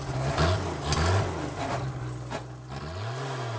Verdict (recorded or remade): recorded